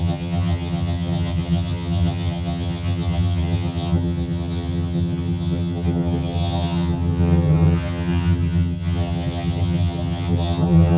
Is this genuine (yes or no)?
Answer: no